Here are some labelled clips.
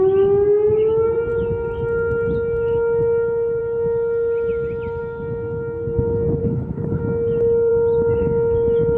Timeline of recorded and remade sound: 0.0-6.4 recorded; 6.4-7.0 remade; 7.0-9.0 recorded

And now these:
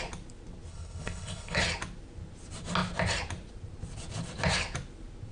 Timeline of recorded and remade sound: 0.0-0.7 recorded; 0.7-1.6 remade; 1.6-5.3 recorded

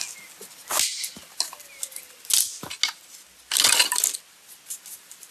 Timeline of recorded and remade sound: 0.0-5.3 recorded

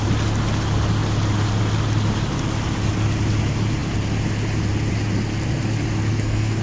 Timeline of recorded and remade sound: 0.0-6.1 recorded; 6.1-6.6 remade

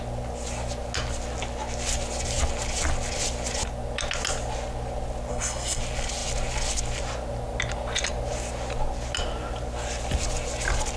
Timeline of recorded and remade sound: 0.0-5.3 recorded; 5.3-5.8 remade; 5.8-11.0 recorded

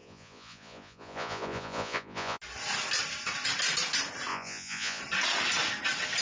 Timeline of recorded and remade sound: 0.0-2.4 remade; 2.4-4.3 recorded; 4.3-5.0 remade; 5.0-6.2 recorded

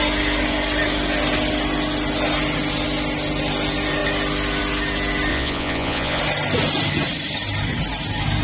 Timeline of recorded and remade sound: 0.0-5.3 recorded; 5.3-6.2 remade; 6.2-8.4 recorded

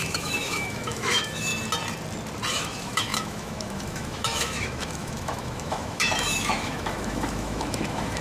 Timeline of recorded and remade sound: 0.0-1.5 remade; 1.5-2.5 recorded; 2.5-8.2 remade